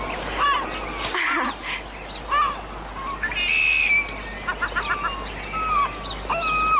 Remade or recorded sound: recorded